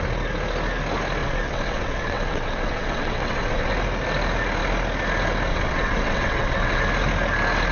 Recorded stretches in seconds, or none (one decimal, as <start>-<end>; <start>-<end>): 0.0-1.2; 3.7-5.5; 6.8-7.7